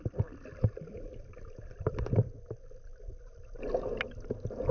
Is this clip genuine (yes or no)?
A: no